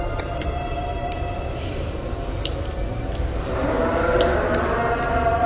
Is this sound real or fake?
real